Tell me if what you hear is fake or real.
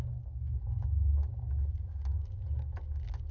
real